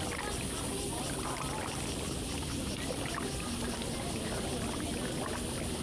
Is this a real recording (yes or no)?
yes